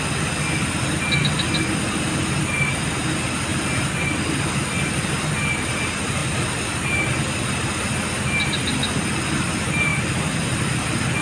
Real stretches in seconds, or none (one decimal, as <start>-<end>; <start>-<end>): 0.0-11.2